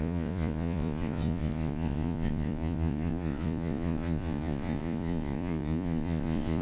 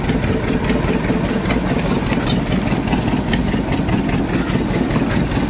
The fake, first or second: first